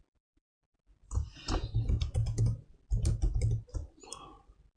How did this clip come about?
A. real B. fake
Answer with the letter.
A